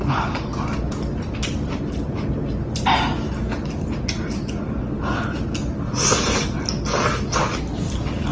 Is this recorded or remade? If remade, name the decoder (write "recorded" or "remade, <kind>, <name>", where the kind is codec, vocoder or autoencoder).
recorded